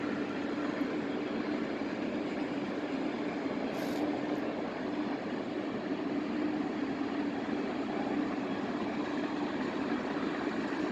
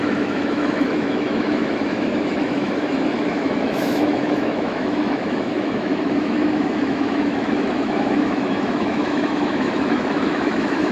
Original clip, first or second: first